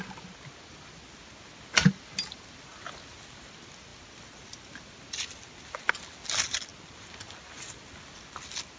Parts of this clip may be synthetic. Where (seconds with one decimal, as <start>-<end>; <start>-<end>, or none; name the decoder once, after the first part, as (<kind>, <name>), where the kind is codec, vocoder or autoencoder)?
none